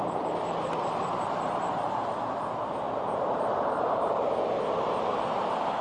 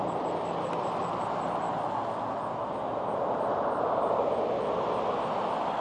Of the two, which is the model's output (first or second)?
first